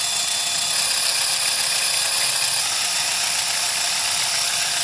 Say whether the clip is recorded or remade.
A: recorded